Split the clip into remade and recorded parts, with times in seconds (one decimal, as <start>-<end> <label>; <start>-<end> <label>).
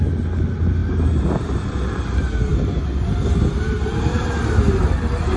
0.0-0.8 recorded; 0.8-2.0 remade; 2.0-5.4 recorded